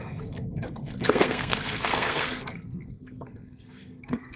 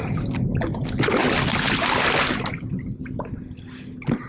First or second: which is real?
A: second